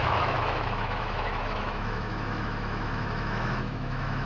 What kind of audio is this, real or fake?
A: fake